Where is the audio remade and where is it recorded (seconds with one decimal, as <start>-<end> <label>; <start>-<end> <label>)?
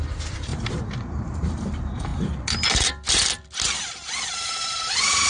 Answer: 0.0-2.1 remade; 2.1-4.3 recorded; 4.3-5.3 remade